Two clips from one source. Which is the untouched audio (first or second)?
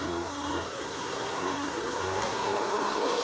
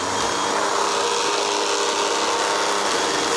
second